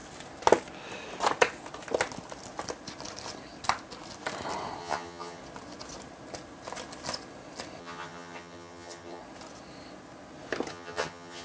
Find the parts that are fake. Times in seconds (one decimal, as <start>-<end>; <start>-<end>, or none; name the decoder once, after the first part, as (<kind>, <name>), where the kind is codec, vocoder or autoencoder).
4.8-5.4 (vocoder, HiFi-GAN); 7.8-9.2; 10.7-11.4